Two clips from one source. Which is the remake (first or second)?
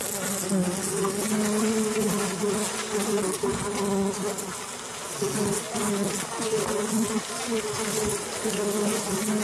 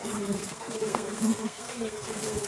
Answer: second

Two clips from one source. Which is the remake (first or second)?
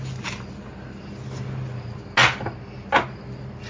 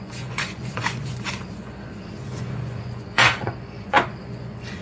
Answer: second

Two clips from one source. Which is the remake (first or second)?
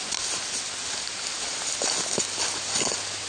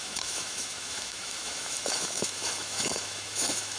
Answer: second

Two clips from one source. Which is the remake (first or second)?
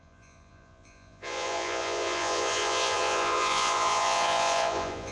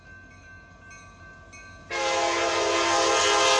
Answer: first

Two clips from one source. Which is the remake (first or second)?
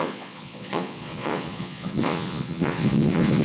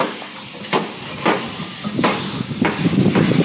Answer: first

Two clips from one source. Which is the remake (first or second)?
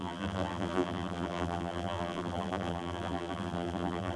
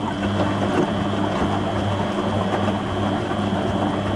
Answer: first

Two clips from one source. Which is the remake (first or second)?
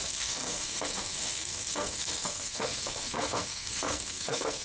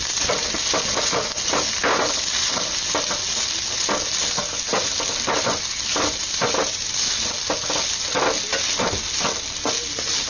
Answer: first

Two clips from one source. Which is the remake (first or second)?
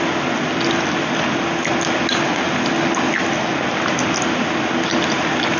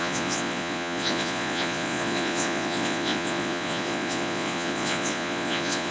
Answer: second